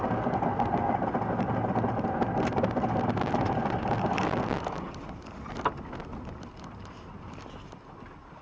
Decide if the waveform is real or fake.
real